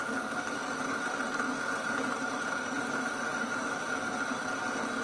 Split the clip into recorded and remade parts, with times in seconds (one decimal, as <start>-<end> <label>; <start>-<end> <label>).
0.0-0.6 remade; 0.6-1.7 recorded; 1.7-5.0 remade